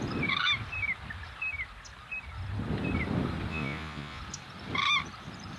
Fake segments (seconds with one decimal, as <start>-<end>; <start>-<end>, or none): 3.5-4.2